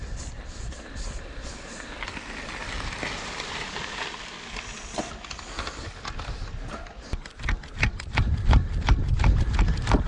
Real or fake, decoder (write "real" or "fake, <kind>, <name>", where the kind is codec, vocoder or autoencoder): real